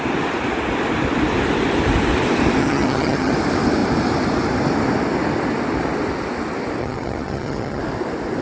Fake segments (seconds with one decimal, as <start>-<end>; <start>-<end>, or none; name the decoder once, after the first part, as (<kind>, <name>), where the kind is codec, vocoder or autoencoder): 2.6-3.3 (vocoder, HiFi-GAN); 6.8-7.8